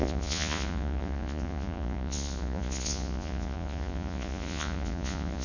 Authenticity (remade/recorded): remade